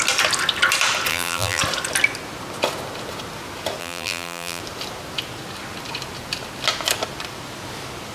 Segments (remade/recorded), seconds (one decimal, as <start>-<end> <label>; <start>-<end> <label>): 0.0-1.1 recorded; 1.1-1.6 remade; 1.6-3.8 recorded; 3.8-4.6 remade; 4.6-8.1 recorded